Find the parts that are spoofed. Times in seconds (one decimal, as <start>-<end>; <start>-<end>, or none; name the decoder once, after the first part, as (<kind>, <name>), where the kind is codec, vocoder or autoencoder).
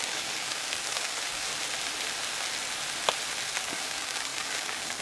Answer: 0.0-1.5 (codec, DAC); 3.6-5.0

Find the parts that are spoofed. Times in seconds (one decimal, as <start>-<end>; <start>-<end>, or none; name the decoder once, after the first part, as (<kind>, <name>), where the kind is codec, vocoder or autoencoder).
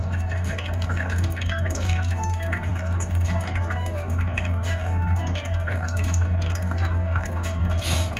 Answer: 0.0-8.2 (codec, DAC)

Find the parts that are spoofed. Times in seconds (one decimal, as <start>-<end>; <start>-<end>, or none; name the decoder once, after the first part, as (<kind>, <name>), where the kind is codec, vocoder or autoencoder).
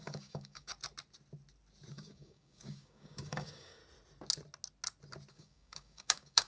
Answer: 0.0-0.7 (codec, DAC); 1.9-3.8; 5.3-6.5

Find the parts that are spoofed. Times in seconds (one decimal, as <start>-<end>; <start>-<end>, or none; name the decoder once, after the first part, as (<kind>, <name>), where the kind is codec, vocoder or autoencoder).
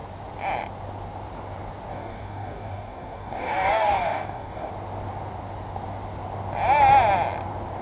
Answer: 1.9-4.7 (codec, DAC)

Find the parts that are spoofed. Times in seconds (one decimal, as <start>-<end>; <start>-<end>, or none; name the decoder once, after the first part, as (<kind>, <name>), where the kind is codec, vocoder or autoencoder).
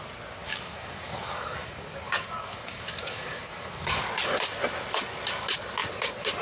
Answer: 0.4-4.1 (codec, DAC)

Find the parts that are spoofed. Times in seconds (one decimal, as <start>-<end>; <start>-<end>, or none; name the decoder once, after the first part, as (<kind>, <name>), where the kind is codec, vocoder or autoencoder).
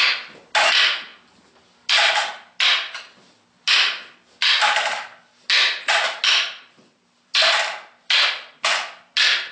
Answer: none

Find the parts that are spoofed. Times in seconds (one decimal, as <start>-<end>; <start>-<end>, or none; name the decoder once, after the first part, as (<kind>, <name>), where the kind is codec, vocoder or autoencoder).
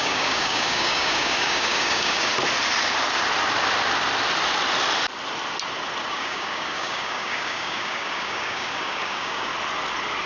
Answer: 0.0-2.3 (codec, DAC); 6.1-9.5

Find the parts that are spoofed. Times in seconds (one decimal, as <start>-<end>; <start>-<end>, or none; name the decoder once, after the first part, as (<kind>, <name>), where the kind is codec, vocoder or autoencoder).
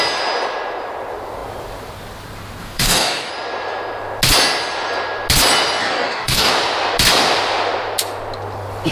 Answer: 2.6-3.3 (codec, DAC); 5.8-6.5